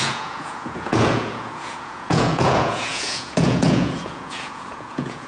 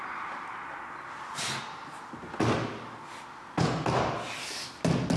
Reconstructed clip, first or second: first